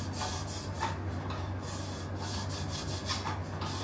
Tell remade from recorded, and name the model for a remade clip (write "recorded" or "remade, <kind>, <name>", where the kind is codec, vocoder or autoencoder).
recorded